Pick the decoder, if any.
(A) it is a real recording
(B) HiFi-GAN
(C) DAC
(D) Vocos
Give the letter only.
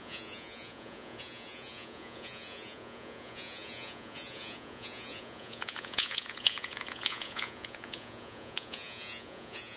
D